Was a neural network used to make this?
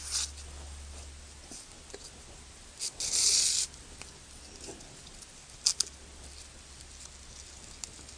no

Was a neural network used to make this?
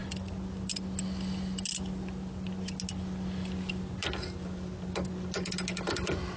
no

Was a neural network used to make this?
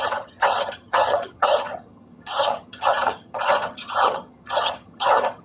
yes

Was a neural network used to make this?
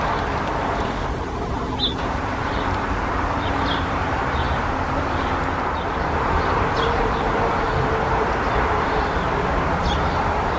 yes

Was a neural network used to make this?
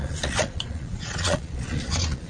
yes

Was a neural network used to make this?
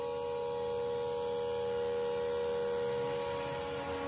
no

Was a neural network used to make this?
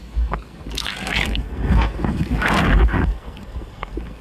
yes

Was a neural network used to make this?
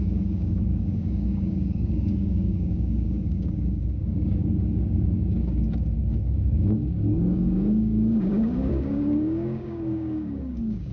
yes